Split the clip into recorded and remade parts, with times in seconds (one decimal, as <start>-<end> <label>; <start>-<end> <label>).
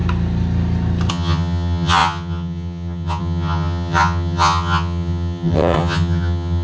0.0-1.1 recorded; 1.1-6.6 remade